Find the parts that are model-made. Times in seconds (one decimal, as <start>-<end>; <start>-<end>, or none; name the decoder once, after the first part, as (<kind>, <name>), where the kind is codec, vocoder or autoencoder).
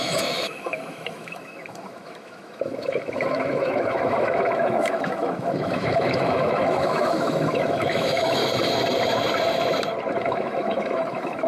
0.0-8.4 (autoencoder, DAC-VAE); 10.2-11.5